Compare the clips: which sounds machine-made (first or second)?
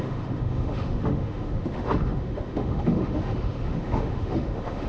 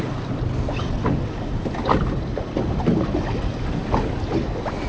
first